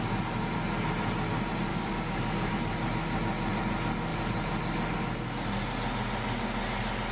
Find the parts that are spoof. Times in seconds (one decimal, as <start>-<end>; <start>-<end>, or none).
1.7-2.5